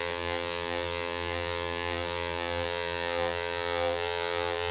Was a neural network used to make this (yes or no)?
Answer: yes